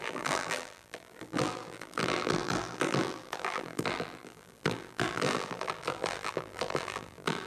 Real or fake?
fake